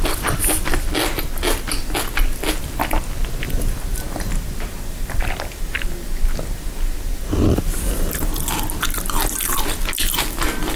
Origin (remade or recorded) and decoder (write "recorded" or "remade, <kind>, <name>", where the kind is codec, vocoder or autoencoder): recorded